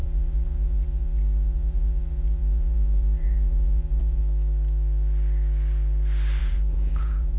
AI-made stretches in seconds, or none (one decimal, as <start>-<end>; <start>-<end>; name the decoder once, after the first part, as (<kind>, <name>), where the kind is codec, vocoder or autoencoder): 0.0-4.2 (vocoder, Vocos); 6.4-7.4